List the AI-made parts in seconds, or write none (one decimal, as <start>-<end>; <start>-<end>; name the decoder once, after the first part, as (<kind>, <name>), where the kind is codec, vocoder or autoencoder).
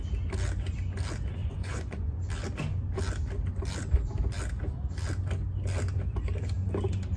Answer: 1.4-2.3 (vocoder, Vocos)